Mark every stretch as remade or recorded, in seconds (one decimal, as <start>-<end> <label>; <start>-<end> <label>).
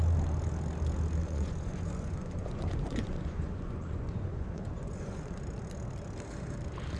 0.0-1.2 recorded; 1.2-5.4 remade; 5.4-7.0 recorded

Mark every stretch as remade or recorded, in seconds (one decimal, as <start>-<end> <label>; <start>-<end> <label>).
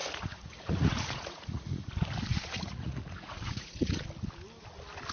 0.0-1.9 remade; 1.9-2.3 recorded; 2.3-4.0 remade; 4.0-5.1 recorded